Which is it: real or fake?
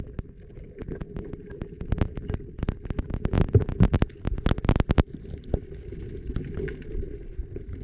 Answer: real